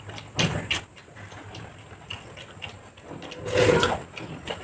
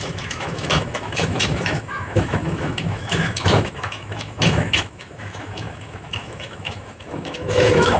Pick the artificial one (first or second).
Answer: second